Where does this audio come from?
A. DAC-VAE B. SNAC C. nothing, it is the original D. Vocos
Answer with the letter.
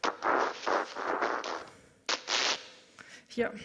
C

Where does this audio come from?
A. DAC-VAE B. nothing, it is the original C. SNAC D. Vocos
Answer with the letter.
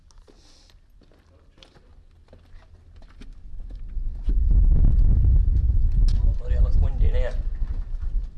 B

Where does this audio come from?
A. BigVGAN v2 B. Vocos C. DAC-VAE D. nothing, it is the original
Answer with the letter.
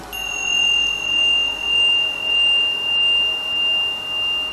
D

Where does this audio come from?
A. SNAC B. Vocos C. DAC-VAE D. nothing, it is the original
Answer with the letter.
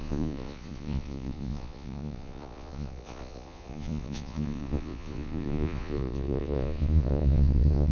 B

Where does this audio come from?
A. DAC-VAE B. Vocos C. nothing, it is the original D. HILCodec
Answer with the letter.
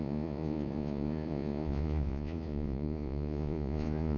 B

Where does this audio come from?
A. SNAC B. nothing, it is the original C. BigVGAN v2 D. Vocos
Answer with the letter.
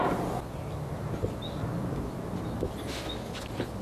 B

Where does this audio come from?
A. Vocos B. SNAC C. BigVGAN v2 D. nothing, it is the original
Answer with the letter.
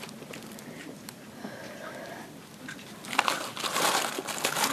D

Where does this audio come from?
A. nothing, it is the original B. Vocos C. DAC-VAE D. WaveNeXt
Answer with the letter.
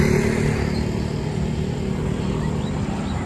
A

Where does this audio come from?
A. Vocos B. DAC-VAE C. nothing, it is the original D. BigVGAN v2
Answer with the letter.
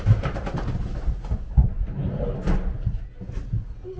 C